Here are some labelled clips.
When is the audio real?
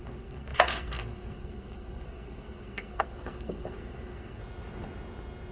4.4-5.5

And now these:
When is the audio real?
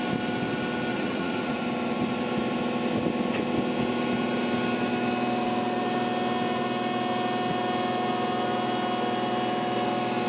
0.0-0.9; 1.6-10.3